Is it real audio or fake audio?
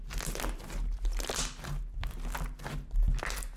real